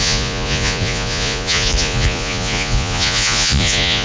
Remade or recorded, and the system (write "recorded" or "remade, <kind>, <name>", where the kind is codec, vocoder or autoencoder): remade, vocoder, Vocos